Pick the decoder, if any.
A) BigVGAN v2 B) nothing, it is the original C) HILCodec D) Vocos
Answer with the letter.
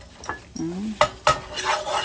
B